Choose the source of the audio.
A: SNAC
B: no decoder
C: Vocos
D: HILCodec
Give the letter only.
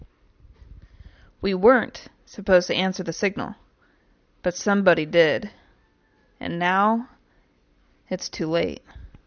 B